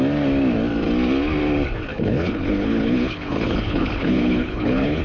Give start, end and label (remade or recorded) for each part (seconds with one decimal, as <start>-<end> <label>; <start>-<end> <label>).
0.0-1.9 recorded; 1.9-5.0 remade